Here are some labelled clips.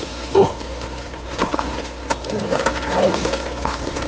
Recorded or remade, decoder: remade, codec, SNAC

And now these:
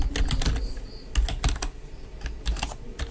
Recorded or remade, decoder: recorded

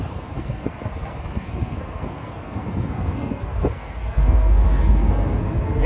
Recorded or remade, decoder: remade, codec, SNAC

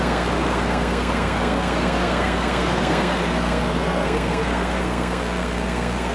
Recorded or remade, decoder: remade, codec, SNAC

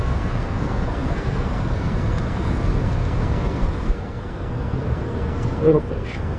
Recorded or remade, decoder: remade, codec, SNAC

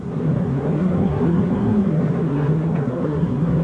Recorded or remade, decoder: remade, codec, SNAC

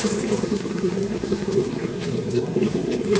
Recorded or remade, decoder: remade, codec, SNAC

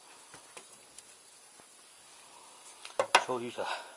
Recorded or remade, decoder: recorded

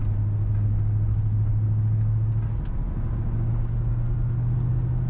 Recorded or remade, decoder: recorded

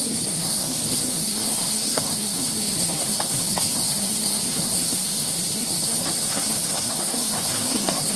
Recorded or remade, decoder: remade, codec, SNAC